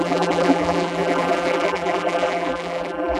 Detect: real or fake fake